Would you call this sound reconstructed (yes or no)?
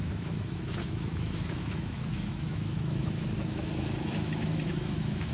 yes